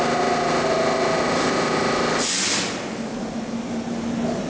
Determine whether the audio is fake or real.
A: real